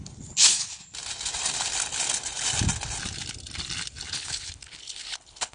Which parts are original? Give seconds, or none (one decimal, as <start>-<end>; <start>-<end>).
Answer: 0.8-4.1